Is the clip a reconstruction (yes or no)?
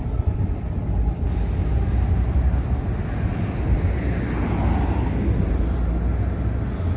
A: no